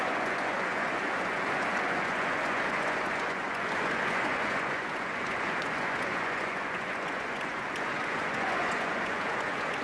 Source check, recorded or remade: remade